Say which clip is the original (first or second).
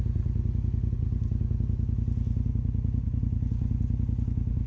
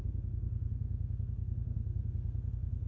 first